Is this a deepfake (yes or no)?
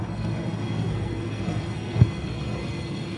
yes